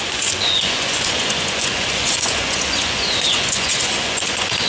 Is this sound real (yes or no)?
no